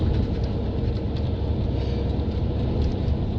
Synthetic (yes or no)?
no